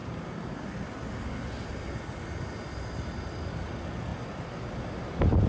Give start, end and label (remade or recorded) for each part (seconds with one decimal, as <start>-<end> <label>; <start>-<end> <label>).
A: 0.0-5.5 recorded

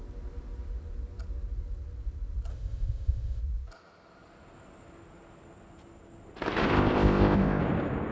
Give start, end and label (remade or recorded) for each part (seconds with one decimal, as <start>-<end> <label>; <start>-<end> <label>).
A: 0.0-2.5 recorded; 2.5-3.4 remade; 3.4-6.7 recorded; 6.7-7.6 remade; 7.6-8.1 recorded

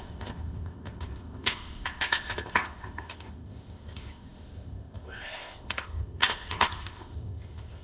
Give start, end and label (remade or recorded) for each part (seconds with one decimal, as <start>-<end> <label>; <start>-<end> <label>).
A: 0.0-7.8 remade

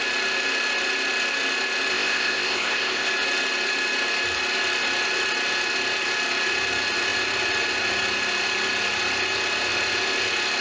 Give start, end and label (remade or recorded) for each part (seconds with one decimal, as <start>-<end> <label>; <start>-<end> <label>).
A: 0.0-1.9 recorded; 1.9-3.1 remade; 3.1-10.6 recorded

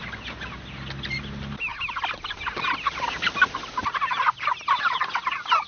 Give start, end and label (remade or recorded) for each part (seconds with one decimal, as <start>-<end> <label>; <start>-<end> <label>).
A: 0.0-5.7 recorded

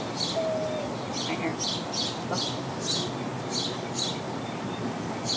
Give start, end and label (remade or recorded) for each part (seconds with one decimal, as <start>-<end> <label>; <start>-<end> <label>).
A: 0.0-5.4 recorded

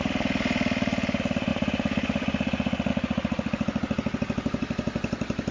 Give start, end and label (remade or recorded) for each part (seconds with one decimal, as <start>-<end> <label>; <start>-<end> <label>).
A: 0.0-5.5 recorded

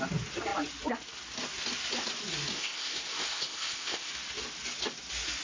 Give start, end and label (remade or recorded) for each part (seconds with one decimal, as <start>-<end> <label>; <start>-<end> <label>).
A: 0.0-2.5 recorded; 2.5-4.1 remade; 4.1-5.4 recorded